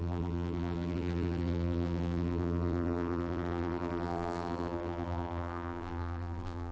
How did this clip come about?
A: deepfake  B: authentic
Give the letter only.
A